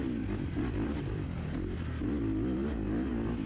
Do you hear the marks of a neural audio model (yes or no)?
no